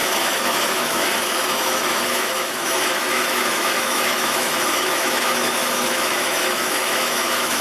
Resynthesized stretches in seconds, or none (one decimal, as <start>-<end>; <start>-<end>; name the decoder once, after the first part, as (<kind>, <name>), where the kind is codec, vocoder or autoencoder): 0.0-7.6 (autoencoder, DAC-VAE)